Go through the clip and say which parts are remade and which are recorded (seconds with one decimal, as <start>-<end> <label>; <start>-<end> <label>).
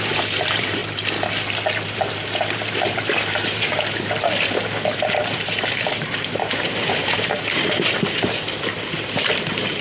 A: 0.0-0.8 remade; 0.8-1.8 recorded; 1.8-9.8 remade